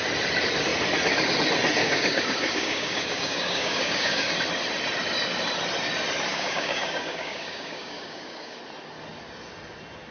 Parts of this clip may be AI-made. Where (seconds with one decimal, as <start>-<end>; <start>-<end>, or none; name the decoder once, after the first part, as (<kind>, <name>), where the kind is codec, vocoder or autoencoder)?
1.8-4.3 (codec, DAC); 6.3-8.6